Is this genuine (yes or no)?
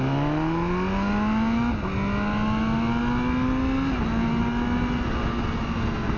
yes